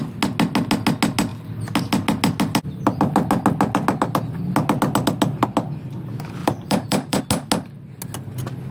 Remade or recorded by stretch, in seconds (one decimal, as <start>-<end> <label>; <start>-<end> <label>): 0.0-6.4 recorded; 6.4-7.2 remade; 7.2-8.7 recorded